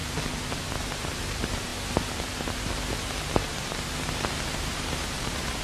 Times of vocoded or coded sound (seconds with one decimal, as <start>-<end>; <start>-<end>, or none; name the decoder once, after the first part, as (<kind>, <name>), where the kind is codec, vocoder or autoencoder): 0.7-1.7 (vocoder, BigVGAN v2); 4.6-5.6